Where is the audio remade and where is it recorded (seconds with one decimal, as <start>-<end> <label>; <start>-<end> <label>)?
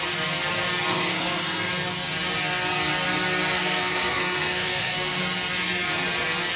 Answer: 0.0-0.9 recorded; 0.9-1.7 remade; 1.7-3.6 recorded; 3.6-5.2 remade; 5.2-6.6 recorded